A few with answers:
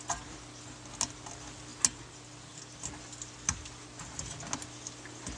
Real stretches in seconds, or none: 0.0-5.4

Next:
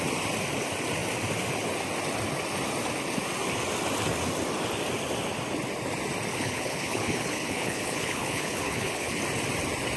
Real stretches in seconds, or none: 0.0-6.3; 9.2-10.0

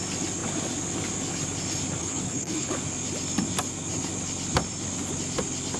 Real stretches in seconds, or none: 0.0-2.0; 2.7-5.8

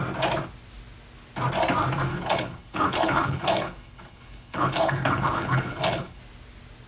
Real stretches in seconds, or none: 0.0-2.1; 6.2-6.9

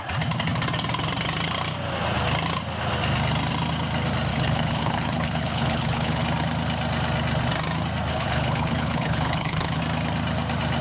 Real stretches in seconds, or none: 0.0-4.3; 6.2-8.1; 9.8-10.8

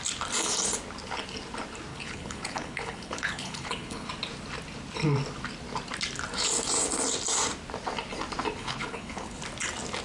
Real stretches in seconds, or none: 0.0-1.9; 4.1-8.6; 9.4-10.0

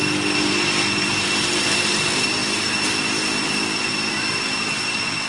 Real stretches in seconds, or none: 0.0-5.3